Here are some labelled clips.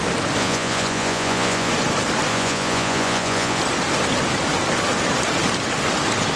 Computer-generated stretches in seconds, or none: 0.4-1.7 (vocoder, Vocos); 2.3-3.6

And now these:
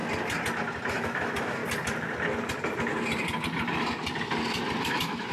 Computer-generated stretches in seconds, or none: 0.9-1.6 (autoencoder, DAC-VAE); 4.8-5.3

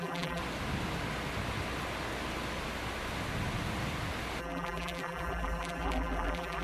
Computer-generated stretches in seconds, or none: 0.0-0.4 (vocoder, BigVGAN v2); 4.4-6.6

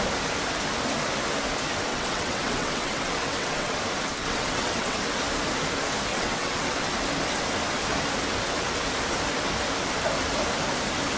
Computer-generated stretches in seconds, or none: 1.9-3.7 (vocoder, WaveNeXt); 4.2-5.0; 6.1-6.9

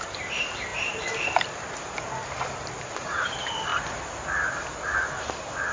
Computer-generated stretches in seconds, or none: 0.0-3.7 (vocoder, BigVGAN v2)

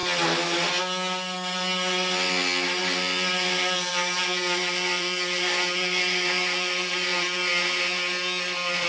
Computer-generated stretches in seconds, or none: 2.8-7.5 (vocoder, BigVGAN v2)

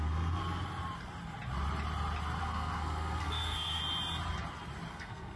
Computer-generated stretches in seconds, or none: 0.0-0.4 (codec, SNAC); 2.4-3.8; 4.9-5.4

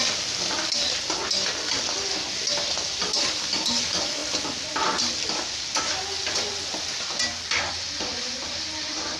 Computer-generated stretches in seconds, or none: none